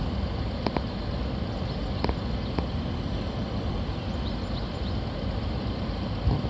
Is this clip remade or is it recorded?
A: recorded